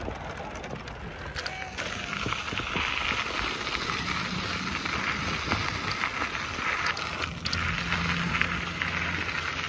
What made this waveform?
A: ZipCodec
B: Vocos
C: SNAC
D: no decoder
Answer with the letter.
D